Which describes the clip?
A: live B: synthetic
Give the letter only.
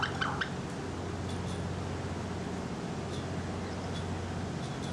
A